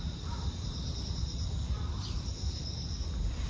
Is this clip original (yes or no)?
yes